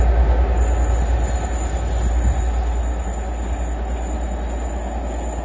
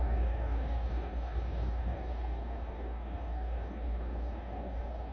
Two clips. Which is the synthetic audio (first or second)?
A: second